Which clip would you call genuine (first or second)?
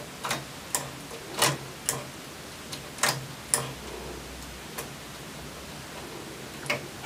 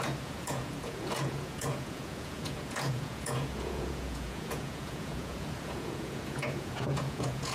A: first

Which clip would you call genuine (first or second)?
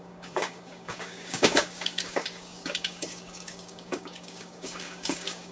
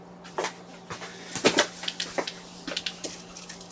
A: second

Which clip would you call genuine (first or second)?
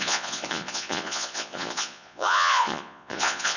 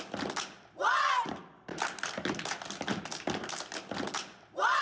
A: second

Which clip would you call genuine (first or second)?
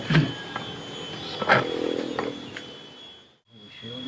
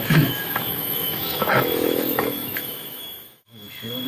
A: first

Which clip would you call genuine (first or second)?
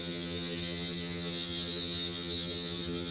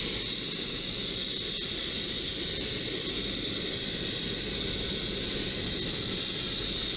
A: second